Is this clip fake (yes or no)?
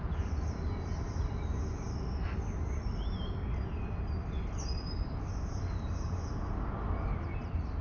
no